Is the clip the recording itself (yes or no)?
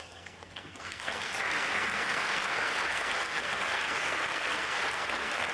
no